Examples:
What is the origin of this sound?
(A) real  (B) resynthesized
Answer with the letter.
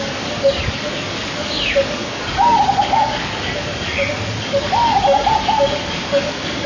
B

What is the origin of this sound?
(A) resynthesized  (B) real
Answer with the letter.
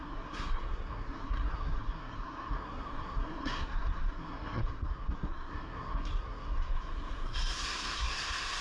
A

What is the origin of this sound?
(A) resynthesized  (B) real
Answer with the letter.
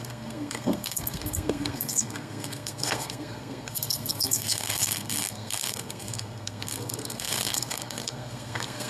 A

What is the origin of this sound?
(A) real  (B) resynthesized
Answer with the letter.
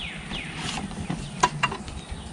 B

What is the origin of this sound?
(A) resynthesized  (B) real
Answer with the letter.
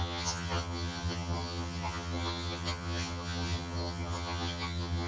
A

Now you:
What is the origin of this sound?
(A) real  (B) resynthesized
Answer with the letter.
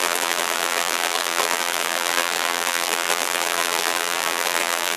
B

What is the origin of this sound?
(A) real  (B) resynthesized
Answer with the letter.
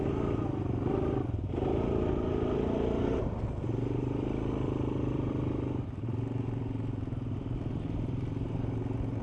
A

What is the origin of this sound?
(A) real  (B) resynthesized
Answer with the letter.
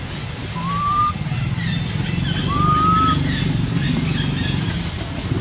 A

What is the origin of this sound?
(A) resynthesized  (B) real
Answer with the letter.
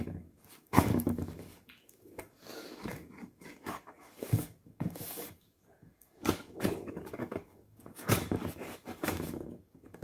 A